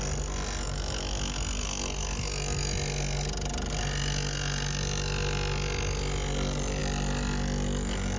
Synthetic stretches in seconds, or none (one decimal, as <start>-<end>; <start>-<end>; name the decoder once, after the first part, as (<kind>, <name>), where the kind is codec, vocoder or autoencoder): none